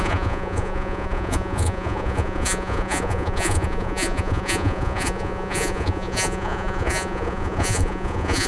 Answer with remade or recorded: remade